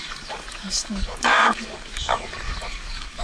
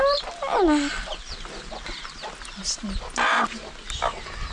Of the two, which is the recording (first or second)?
second